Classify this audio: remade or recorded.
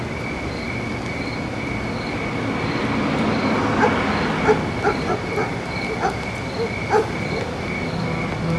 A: recorded